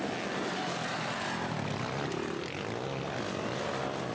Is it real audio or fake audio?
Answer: real